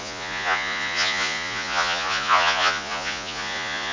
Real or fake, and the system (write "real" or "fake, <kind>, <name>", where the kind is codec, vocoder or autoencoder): fake, vocoder, Vocos